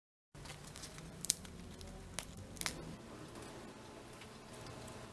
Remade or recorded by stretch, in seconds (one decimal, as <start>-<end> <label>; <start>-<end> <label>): 0.0-0.5 recorded; 0.5-1.5 remade; 1.5-5.1 recorded